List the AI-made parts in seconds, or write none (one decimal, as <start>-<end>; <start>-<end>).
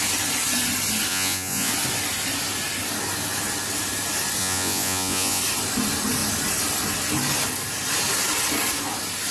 1.1-1.7; 4.4-5.4